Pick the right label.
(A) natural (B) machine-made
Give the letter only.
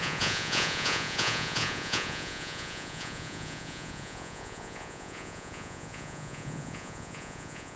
B